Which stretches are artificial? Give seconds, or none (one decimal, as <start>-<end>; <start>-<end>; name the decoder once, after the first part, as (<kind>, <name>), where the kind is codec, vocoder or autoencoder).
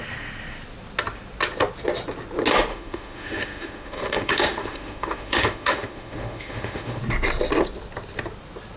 2.7-7.0 (autoencoder, DAC-VAE)